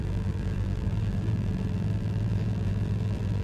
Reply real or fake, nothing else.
fake